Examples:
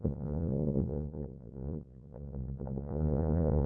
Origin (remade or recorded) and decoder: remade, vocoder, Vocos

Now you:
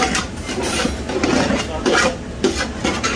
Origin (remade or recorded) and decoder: recorded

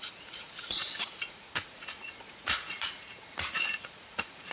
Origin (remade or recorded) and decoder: remade, vocoder, Vocos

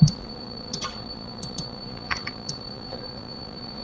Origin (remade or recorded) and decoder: remade, vocoder, Vocos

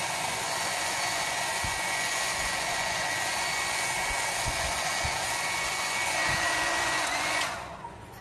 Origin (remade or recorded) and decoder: remade, vocoder, Vocos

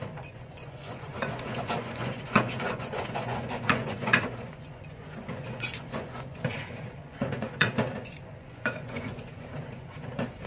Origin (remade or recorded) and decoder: remade, vocoder, Vocos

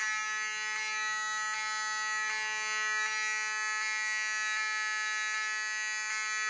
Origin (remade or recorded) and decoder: recorded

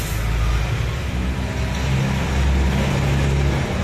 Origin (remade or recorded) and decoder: recorded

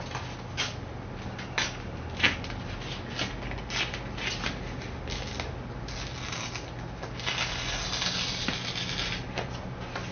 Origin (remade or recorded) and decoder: recorded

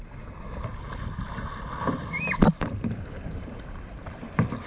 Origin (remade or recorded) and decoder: recorded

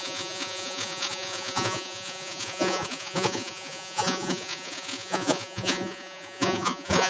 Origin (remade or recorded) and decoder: remade, vocoder, Vocos